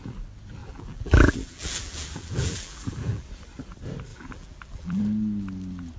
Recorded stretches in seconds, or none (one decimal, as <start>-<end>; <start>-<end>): 0.0-0.6; 3.3-4.1; 5.0-6.0